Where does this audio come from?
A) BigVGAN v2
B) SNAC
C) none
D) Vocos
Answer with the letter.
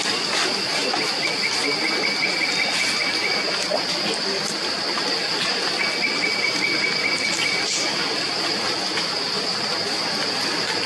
C